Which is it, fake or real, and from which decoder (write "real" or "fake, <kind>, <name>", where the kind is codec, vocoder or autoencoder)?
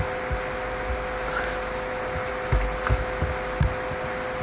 real